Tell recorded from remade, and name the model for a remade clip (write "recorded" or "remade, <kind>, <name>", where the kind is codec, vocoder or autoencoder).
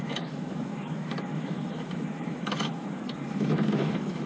remade, autoencoder, DAC-VAE